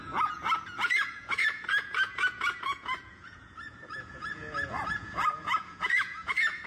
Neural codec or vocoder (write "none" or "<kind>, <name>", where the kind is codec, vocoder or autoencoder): vocoder, Vocos